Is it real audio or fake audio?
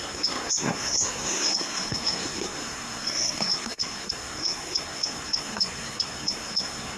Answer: fake